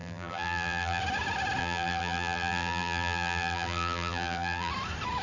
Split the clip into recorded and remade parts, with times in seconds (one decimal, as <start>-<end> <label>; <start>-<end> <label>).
0.0-1.0 remade; 1.0-1.6 recorded; 1.6-4.7 remade; 4.7-5.2 recorded